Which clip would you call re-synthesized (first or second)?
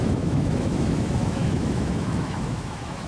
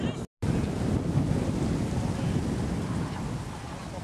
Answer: first